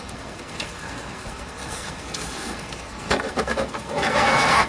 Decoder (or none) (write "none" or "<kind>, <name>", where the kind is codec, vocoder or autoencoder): codec, SNAC